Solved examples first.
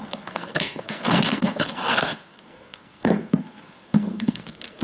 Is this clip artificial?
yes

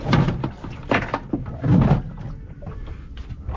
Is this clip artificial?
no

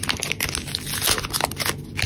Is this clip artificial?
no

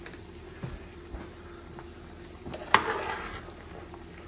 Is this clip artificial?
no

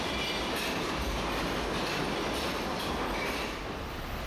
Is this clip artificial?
no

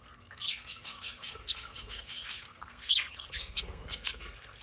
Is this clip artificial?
yes